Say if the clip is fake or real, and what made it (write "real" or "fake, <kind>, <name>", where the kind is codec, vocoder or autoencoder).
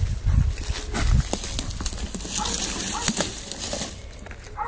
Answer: real